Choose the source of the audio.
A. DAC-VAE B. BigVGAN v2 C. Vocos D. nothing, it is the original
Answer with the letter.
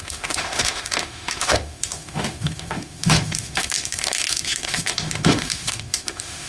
A